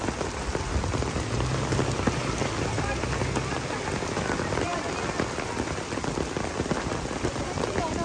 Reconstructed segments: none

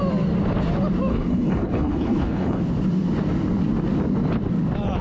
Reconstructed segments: 1.1-2.6 (codec, HILCodec)

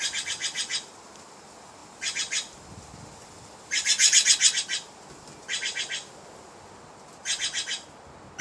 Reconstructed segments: none

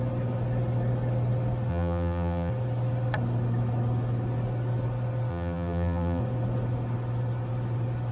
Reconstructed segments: 1.7-2.5 (vocoder, BigVGAN v2); 5.3-6.2

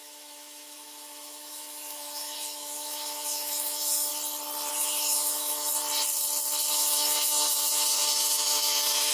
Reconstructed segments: 0.0-4.1 (autoencoder, DAC-VAE); 4.7-5.7; 6.7-9.1